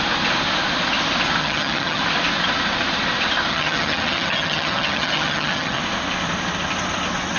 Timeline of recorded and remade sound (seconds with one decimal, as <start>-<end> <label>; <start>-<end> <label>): 0.0-1.4 recorded; 1.4-2.0 remade; 2.0-3.5 recorded; 3.5-5.8 remade; 5.8-7.4 recorded